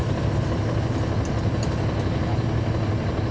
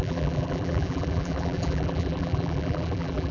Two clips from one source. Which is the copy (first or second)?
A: second